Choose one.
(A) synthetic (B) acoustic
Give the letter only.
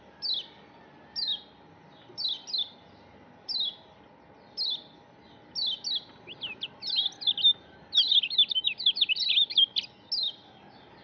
B